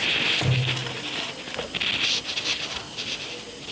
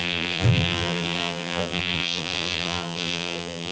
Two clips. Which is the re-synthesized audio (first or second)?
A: second